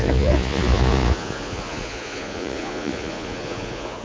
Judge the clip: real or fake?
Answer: fake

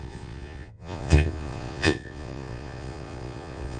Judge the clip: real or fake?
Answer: fake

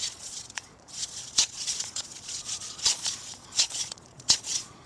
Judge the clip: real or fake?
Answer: fake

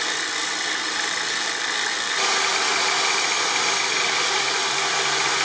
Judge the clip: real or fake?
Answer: real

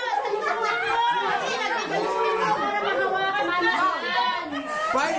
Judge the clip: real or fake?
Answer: real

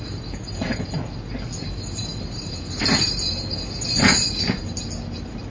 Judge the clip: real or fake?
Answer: real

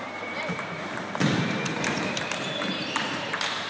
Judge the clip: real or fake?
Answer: fake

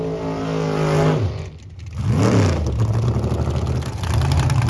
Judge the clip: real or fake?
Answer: real